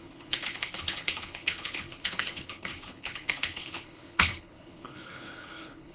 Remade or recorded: remade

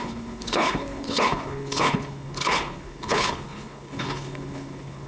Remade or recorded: remade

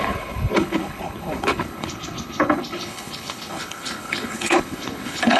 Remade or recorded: remade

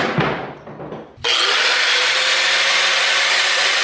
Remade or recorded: recorded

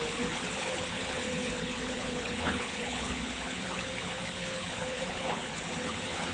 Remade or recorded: remade